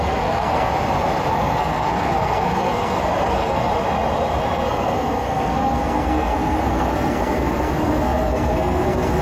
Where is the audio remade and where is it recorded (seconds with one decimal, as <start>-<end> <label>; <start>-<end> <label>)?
0.0-0.7 remade; 0.7-1.3 recorded; 1.3-3.7 remade; 3.7-4.4 recorded; 4.4-9.2 remade